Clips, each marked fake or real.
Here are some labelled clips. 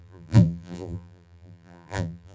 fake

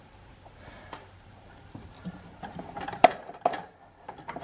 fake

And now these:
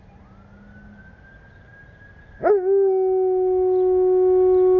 real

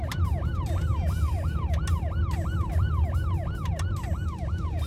real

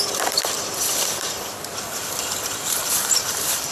fake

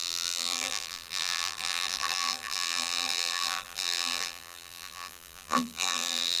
fake